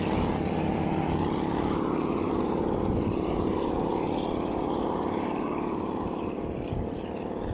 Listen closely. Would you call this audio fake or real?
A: fake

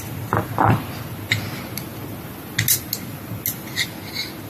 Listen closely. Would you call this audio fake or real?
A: real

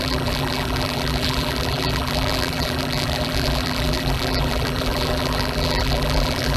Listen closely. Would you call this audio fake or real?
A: fake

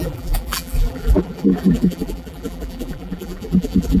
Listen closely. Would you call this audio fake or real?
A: fake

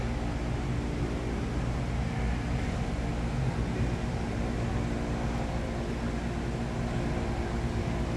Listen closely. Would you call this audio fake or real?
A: real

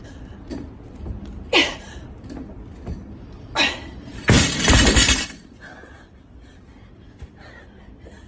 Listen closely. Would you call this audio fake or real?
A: fake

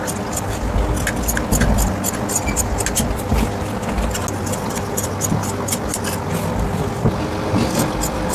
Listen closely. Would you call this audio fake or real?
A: real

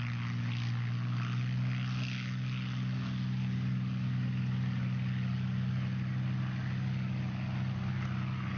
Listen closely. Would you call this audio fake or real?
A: real